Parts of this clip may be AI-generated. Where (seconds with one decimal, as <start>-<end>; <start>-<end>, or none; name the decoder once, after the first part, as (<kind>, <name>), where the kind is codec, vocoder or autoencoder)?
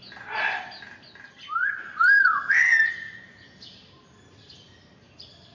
1.6-2.8 (vocoder, Vocos)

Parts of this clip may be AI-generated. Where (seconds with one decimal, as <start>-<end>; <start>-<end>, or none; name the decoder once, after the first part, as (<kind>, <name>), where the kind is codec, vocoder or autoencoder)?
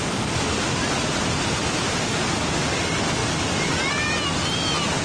none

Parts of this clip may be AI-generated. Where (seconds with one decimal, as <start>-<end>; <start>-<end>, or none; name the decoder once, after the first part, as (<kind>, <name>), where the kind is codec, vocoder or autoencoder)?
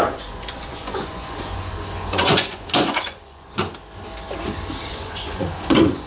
0.0-3.6 (vocoder, Vocos); 4.9-6.1